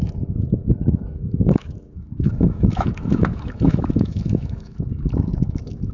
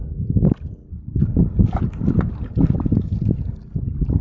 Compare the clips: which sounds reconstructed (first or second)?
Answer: first